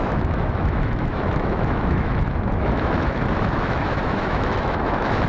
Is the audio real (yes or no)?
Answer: no